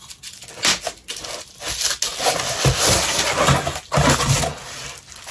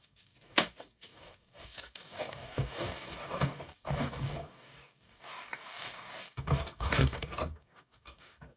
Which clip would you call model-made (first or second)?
second